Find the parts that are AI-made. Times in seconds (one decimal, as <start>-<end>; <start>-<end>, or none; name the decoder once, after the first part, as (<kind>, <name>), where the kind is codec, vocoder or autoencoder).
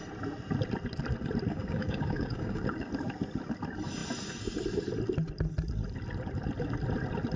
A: 1.5-2.9 (codec, DAC)